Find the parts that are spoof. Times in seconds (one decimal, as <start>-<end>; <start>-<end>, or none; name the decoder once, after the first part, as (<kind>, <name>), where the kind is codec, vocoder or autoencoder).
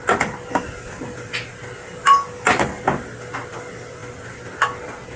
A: none